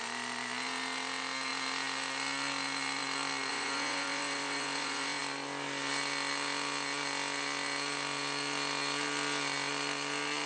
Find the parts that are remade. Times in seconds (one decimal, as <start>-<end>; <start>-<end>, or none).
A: 3.5-5.2